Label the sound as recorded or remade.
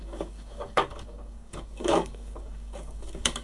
remade